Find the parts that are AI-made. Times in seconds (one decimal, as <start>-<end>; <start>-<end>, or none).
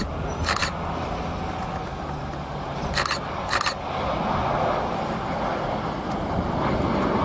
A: none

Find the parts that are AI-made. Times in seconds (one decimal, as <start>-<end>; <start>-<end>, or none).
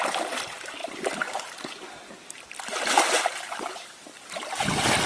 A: none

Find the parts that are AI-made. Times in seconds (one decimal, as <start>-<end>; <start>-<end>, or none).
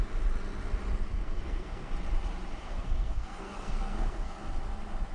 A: 1.1-1.9; 2.6-4.4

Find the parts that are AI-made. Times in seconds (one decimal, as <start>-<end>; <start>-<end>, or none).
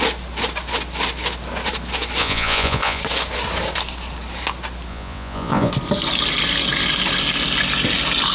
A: 2.2-3.0; 4.9-5.7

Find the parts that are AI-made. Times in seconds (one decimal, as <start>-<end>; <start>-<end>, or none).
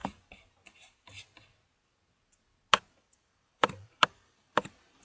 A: 3.0-5.0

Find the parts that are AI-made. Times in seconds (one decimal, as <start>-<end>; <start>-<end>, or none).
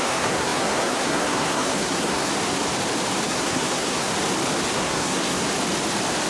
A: 0.0-2.3; 3.3-4.1; 4.7-5.5